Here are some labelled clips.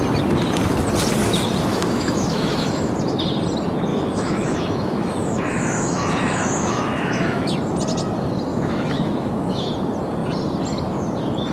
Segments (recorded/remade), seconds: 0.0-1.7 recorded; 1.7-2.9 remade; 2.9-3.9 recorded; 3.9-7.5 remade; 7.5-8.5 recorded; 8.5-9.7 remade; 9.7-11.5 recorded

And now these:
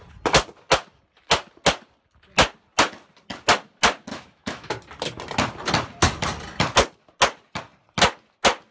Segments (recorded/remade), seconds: 0.0-4.1 recorded; 4.1-4.7 remade; 4.7-8.7 recorded

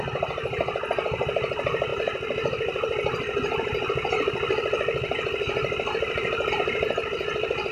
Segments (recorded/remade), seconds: 0.0-7.7 recorded

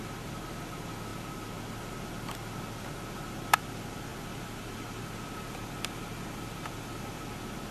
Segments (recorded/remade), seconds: 0.0-7.7 recorded